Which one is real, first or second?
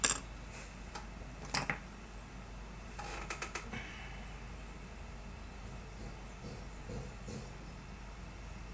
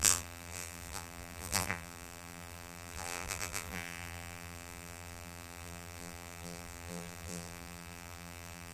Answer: first